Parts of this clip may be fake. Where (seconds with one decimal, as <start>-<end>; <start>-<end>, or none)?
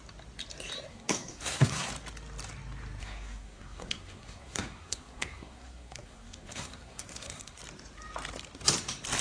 0.9-1.9; 3.0-7.6